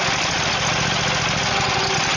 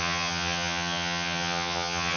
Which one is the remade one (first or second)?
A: second